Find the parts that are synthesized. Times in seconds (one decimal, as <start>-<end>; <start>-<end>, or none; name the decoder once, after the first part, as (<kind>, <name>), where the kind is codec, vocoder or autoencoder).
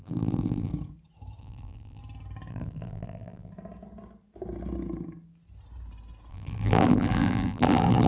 0.0-0.7 (vocoder, BigVGAN v2); 1.4-2.0; 2.5-3.5; 6.3-8.1